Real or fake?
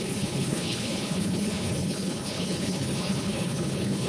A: fake